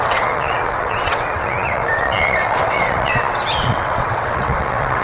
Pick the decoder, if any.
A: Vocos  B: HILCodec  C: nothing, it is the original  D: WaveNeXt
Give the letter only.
D